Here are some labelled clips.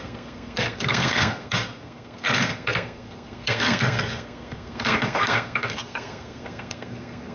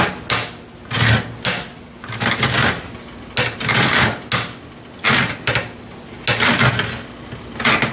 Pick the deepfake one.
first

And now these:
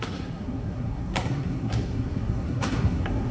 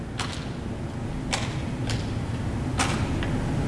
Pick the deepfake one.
first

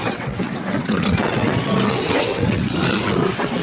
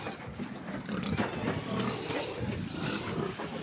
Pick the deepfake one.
first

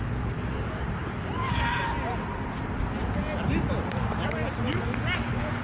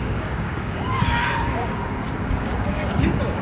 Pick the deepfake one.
second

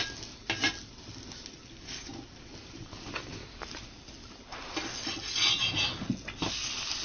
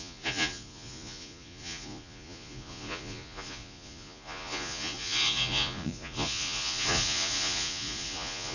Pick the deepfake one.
second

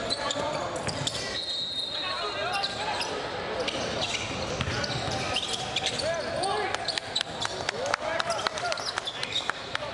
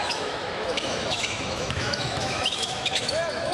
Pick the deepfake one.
second